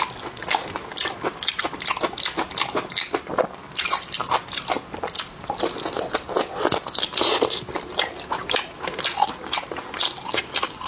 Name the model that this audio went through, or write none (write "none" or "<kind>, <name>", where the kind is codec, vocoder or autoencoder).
none